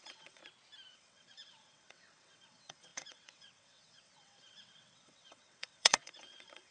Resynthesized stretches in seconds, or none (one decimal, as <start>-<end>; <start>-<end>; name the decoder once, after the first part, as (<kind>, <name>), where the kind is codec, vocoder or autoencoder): 0.0-0.4 (vocoder, WaveNeXt); 0.9-6.7